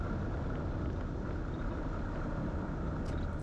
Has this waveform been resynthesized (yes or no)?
no